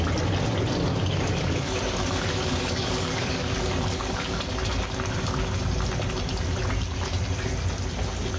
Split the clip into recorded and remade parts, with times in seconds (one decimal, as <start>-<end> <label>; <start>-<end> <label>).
0.0-0.9 recorded; 0.9-4.4 remade; 4.4-8.4 recorded